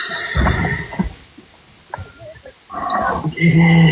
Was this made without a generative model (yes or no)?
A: yes